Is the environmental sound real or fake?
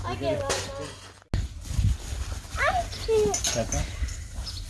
real